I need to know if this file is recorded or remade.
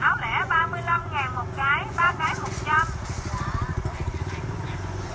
remade